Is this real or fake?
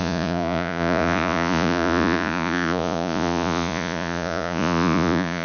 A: fake